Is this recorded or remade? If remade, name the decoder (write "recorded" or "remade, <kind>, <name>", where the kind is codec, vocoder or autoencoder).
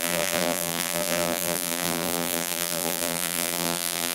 remade, vocoder, BigVGAN v2